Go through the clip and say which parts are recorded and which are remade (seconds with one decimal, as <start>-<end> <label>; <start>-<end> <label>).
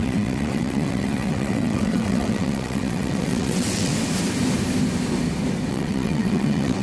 0.0-3.9 remade; 3.9-5.7 recorded; 5.7-6.8 remade